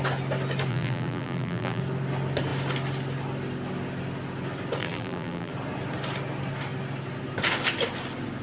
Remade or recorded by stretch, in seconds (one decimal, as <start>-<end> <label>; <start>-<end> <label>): 0.0-0.7 recorded; 0.7-1.8 remade; 1.8-4.8 recorded; 4.8-5.5 remade; 5.5-8.4 recorded